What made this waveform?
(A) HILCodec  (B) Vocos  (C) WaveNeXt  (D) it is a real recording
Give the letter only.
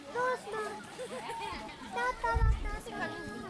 D